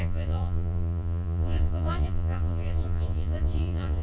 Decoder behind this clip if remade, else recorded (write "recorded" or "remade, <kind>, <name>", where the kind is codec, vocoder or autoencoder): remade, vocoder, Vocos